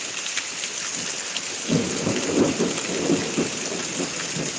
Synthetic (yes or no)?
no